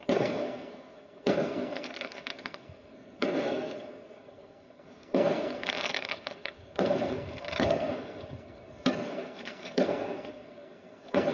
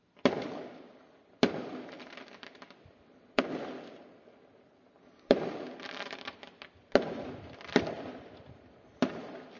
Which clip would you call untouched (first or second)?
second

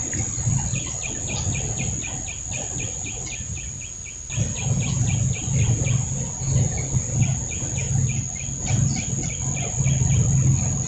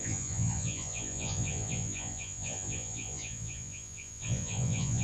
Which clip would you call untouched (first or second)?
first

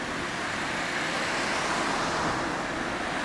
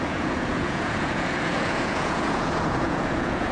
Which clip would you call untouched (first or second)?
first